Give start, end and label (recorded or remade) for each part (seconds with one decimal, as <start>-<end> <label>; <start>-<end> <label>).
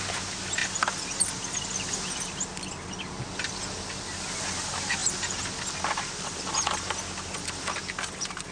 0.0-8.5 recorded